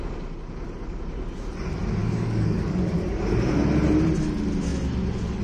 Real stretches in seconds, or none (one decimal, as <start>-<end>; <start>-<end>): 0.0-2.0; 3.2-5.4